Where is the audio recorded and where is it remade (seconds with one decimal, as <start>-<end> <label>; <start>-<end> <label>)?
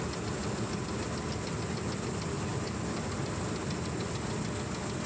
0.0-0.4 recorded; 0.4-0.9 remade; 0.9-2.5 recorded; 2.5-3.2 remade; 3.2-5.1 recorded